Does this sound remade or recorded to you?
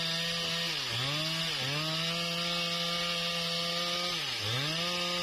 recorded